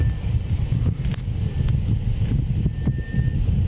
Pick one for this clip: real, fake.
real